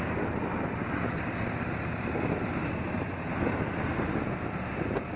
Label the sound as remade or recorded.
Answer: recorded